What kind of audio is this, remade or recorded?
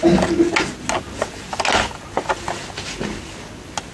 recorded